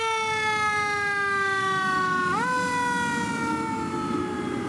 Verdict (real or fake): real